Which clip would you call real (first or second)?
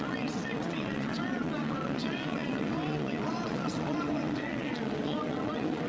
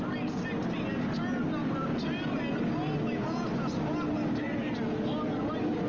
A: second